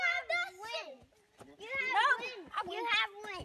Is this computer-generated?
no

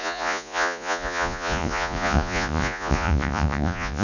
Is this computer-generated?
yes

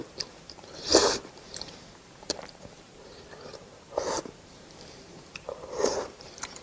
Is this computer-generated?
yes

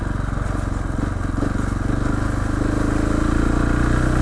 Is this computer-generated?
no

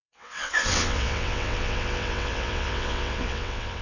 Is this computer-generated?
yes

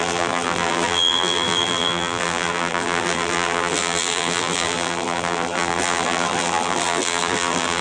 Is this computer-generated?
yes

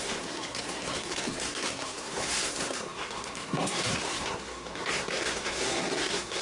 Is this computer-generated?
yes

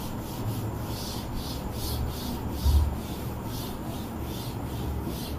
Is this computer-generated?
no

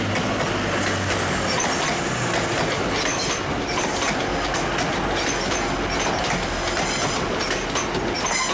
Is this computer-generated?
no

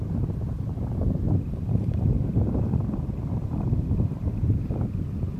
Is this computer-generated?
yes